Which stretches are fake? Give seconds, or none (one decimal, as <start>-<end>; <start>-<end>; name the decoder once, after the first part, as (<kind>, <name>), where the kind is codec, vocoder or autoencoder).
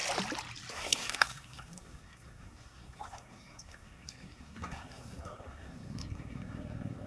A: 0.7-7.1 (codec, SNAC)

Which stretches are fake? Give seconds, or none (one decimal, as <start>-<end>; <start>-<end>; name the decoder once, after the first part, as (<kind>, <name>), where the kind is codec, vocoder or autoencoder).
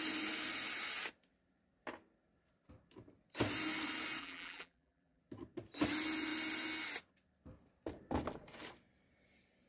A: 4.2-5.2 (vocoder, BigVGAN v2)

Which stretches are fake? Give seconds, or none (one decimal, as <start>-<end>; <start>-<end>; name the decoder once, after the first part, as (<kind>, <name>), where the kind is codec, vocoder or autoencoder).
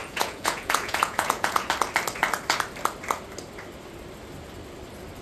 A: 0.0-1.7 (vocoder, Vocos)